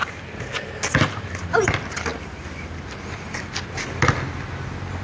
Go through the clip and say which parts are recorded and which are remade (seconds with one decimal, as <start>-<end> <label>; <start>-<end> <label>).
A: 0.0-5.0 recorded